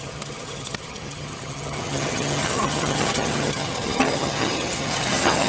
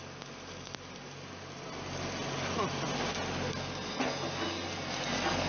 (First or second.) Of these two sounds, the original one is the second